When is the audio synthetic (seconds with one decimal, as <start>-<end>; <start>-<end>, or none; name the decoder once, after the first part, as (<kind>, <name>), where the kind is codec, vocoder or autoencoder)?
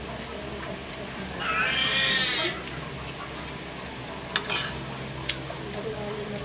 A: none